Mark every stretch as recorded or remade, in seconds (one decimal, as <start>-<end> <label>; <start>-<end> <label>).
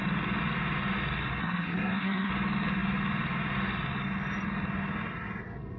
0.0-1.4 recorded; 1.4-2.3 remade; 2.3-5.8 recorded